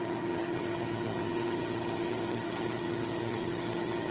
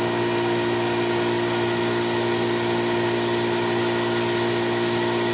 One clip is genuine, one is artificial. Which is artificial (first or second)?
first